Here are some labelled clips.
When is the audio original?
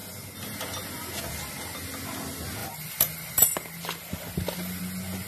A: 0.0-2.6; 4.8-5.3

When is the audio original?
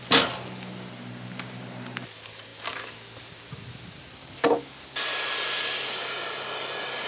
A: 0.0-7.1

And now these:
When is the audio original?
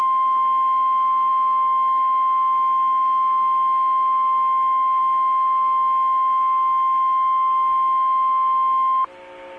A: 0.0-9.6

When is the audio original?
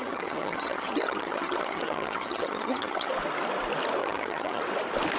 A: 3.1-4.0; 4.6-5.2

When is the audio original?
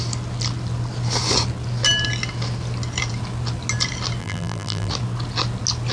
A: 0.0-4.2; 4.9-5.9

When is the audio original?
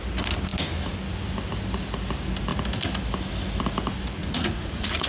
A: 0.0-4.2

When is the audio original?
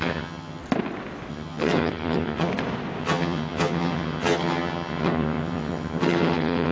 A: 0.6-1.3; 2.5-3.0